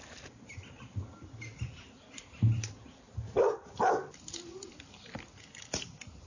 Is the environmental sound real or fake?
real